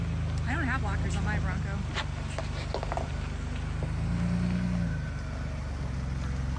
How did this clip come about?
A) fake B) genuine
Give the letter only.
B